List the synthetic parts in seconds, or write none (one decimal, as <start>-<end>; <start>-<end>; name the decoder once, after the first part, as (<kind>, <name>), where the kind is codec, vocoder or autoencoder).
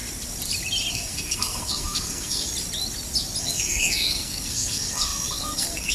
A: 0.9-2.5 (codec, SNAC); 3.4-5.9